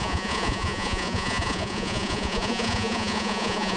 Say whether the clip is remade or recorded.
remade